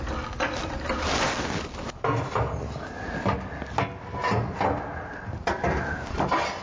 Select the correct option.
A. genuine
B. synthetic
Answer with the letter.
A